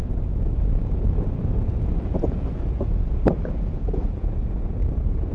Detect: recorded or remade remade